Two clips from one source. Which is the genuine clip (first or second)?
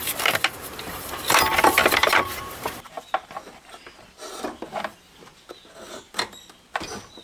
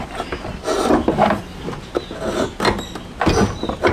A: second